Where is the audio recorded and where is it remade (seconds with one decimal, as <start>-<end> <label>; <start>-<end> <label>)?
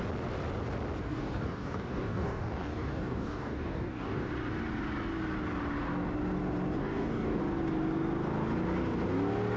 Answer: 0.0-1.0 recorded; 1.0-4.3 remade; 4.3-6.8 recorded; 6.8-7.4 remade; 7.4-9.6 recorded